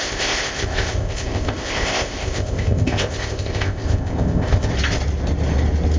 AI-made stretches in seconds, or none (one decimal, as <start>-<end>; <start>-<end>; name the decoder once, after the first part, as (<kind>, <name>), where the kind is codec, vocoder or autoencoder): 0.0-4.7 (codec, ZipCodec)